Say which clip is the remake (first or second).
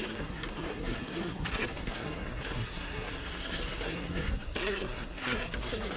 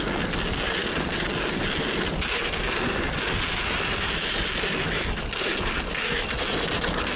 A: first